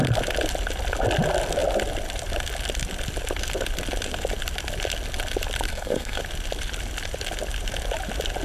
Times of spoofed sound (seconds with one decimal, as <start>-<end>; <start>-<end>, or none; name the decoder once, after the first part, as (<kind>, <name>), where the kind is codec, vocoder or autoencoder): 5.7-6.2 (codec, SNAC)